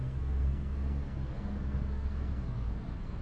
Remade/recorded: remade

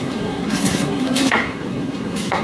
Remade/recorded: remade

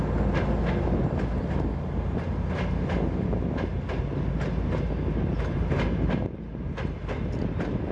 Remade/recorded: recorded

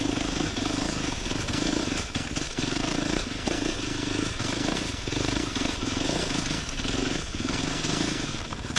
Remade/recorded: remade